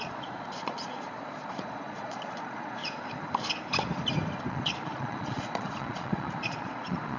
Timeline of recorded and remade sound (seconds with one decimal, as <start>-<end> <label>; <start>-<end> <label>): 0.0-2.8 remade; 2.8-4.5 recorded; 4.5-7.2 remade